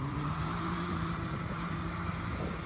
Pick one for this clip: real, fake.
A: fake